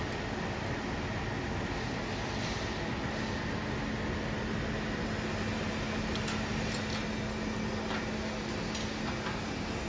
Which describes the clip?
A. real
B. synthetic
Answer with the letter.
A